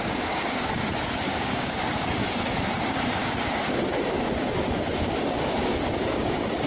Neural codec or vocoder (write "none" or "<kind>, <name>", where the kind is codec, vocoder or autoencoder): codec, DAC